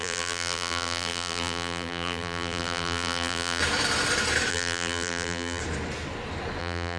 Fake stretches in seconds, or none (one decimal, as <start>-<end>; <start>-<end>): 0.0-3.6; 4.5-5.6; 6.6-7.0